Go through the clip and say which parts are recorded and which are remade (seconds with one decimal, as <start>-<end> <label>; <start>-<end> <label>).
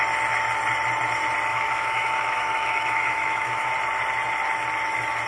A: 0.0-1.5 recorded; 1.5-3.7 remade; 3.7-5.3 recorded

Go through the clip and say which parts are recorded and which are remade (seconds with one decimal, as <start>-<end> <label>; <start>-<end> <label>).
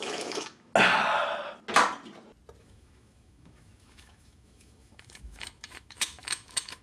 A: 0.0-0.7 remade; 0.7-2.6 recorded; 2.6-6.8 remade